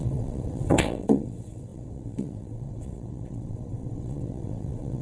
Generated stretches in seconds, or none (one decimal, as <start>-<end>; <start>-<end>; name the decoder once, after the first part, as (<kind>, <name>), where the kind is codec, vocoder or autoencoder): 0.0-5.0 (vocoder, WaveNeXt)